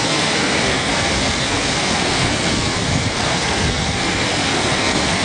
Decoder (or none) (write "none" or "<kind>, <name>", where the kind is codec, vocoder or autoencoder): codec, SNAC